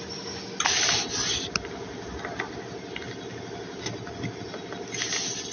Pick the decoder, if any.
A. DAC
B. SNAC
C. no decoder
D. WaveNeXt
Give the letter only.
C